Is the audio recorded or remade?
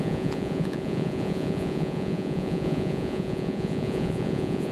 remade